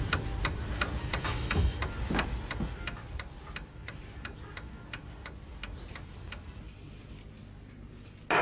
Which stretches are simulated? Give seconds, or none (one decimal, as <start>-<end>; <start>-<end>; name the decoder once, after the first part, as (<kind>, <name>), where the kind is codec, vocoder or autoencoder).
1.2-1.8 (autoencoder, DAC-VAE)